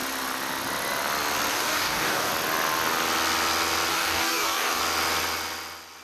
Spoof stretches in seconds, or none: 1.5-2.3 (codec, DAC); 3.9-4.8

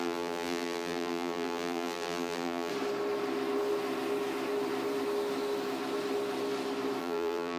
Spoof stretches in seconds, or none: 0.0-2.7 (vocoder, BigVGAN v2); 7.0-7.6

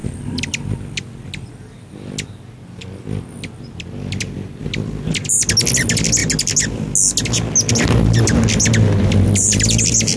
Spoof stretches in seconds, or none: 0.0-2.1 (vocoder, BigVGAN v2); 4.6-5.4

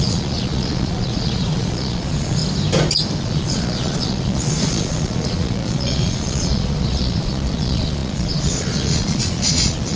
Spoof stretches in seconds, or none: 0.0-2.4 (vocoder, Vocos); 3.2-10.0

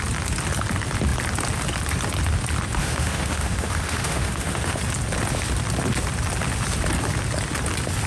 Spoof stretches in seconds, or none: 2.8-4.8 (autoencoder, DAC-VAE)

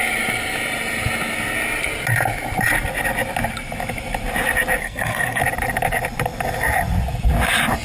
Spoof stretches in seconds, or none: 4.8-5.4 (codec, SNAC)

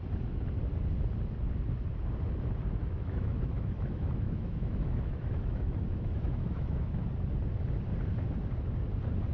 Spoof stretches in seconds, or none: 2.8-7.1 (autoencoder, DAC-VAE)